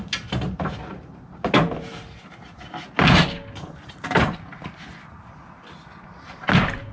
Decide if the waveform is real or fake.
real